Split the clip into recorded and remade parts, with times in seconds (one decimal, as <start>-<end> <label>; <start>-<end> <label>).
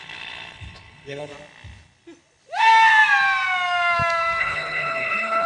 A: 0.0-1.3 remade; 1.3-4.4 recorded; 4.4-5.5 remade